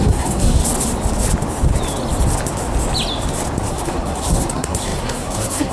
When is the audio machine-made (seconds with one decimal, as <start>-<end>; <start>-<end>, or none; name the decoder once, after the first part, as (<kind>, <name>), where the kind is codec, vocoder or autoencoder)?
0.0-0.6 (codec, SNAC); 3.7-5.7